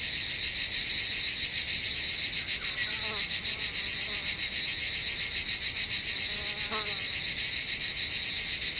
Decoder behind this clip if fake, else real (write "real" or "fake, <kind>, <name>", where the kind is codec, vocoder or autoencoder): real